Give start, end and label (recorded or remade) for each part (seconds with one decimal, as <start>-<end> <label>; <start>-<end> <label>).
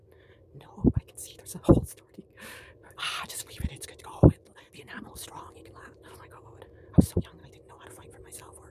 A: 0.0-8.7 recorded